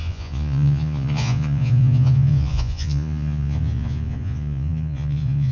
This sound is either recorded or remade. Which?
remade